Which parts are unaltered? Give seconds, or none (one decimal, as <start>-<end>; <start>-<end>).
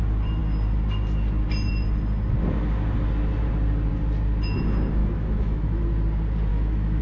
0.0-5.0; 5.8-6.5